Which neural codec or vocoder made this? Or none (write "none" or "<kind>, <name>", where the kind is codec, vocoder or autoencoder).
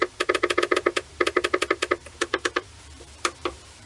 vocoder, BigVGAN v2